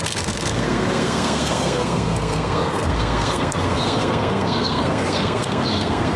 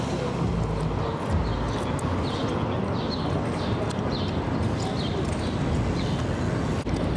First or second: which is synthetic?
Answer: first